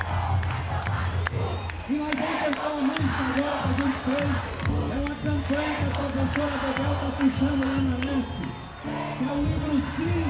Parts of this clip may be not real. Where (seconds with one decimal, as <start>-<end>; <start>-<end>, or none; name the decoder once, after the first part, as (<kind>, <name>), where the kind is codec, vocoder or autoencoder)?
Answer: none